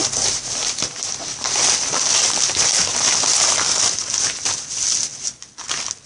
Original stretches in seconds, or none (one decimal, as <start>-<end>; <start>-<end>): 3.7-5.1